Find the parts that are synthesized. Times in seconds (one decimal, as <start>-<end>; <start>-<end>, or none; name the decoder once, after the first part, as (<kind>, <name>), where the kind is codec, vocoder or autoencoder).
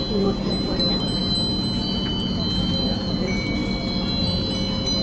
none